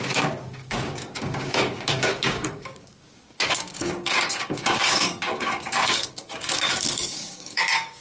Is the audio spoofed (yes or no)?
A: yes